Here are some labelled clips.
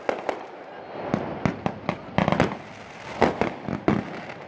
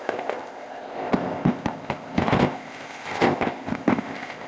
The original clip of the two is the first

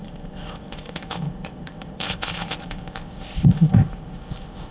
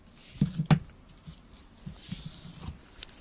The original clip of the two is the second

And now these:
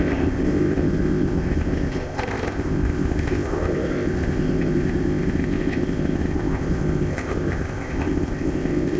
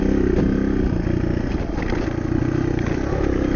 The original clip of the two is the second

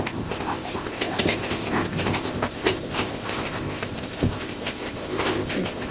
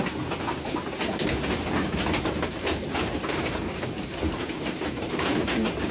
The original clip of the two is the second